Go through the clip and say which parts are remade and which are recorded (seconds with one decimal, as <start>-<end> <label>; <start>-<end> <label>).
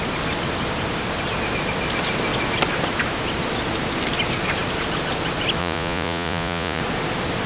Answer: 0.0-5.6 recorded; 5.6-6.8 remade; 6.8-7.5 recorded